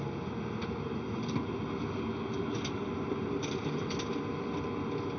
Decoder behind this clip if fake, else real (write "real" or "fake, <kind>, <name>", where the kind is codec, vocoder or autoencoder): real